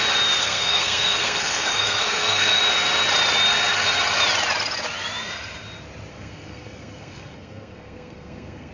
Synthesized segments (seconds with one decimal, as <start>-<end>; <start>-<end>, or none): 0.4-2.6; 6.1-8.7